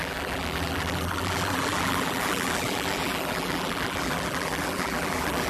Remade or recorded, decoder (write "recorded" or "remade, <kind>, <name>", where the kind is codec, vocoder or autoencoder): remade, vocoder, BigVGAN v2